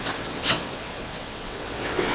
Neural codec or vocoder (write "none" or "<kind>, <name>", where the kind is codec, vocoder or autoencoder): vocoder, WaveNeXt